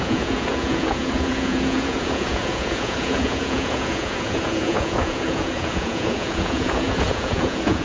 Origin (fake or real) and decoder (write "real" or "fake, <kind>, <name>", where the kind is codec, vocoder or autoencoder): fake, vocoder, Vocos